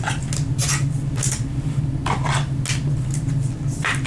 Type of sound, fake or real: real